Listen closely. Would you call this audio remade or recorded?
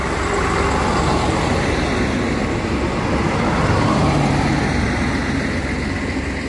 recorded